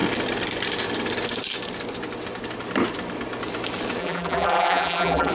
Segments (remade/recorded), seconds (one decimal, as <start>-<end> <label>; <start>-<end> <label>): 0.0-4.0 recorded; 4.0-5.3 remade